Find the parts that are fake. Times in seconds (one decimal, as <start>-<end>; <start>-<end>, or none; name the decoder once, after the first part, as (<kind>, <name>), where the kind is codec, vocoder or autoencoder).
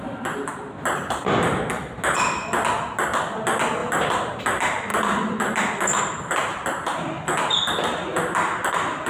3.8-4.4 (vocoder, BigVGAN v2)